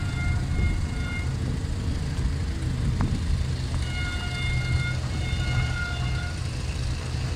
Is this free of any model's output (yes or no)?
yes